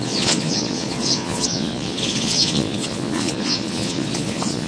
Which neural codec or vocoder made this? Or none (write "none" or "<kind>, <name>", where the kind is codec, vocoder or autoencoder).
vocoder, Vocos